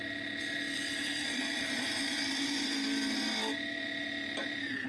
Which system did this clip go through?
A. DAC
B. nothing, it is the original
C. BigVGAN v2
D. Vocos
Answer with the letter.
C